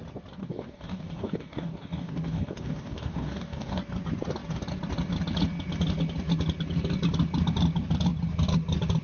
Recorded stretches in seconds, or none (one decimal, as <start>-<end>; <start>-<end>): 0.0-0.4; 3.8-9.0